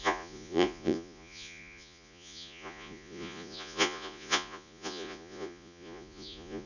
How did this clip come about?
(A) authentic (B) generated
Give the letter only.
B